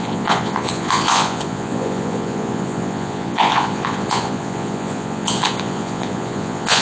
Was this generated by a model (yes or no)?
yes